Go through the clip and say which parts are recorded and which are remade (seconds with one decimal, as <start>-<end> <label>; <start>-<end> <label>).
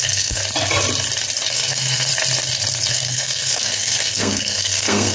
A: 0.0-0.4 remade; 0.4-1.5 recorded; 1.5-2.1 remade; 2.1-2.9 recorded; 2.9-5.1 remade